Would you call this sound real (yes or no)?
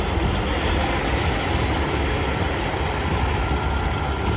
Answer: yes